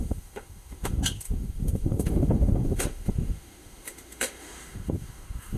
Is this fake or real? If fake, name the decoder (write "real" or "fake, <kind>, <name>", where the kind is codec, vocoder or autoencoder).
fake, autoencoder, DAC-VAE